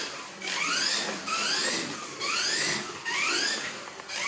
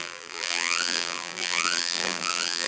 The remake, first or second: second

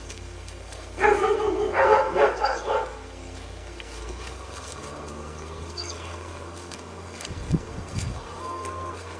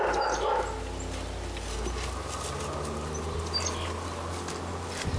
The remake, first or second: first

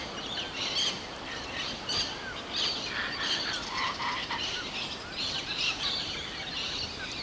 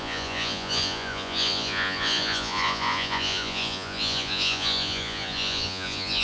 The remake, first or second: second